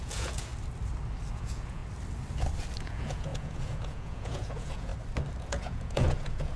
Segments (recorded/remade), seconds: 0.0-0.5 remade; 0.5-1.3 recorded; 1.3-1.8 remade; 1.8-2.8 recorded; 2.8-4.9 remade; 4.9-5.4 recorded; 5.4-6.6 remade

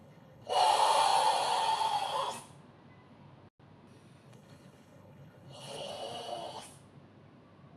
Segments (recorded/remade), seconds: 0.0-0.5 remade; 0.5-4.3 recorded; 4.3-5.9 remade; 5.9-7.8 recorded

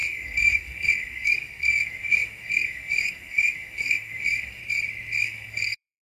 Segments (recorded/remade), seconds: 0.0-4.6 remade; 4.6-5.2 recorded; 5.2-6.0 remade

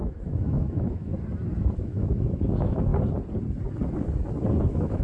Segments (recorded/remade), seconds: 0.0-1.1 remade; 1.1-1.8 recorded; 1.8-2.9 remade; 2.9-4.6 recorded; 4.6-5.0 remade

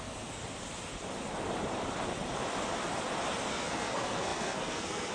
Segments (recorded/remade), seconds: 0.0-0.4 remade; 0.4-3.5 recorded; 3.5-5.1 remade

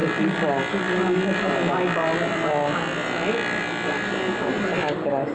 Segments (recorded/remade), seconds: 0.0-5.3 recorded

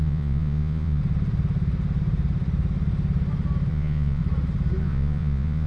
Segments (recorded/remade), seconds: 0.0-1.0 remade; 1.0-3.7 recorded; 3.7-4.2 remade; 4.2-4.8 recorded; 4.8-5.7 remade